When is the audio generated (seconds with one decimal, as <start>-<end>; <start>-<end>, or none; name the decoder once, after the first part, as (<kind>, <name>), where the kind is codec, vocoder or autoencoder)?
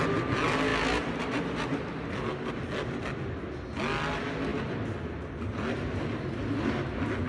none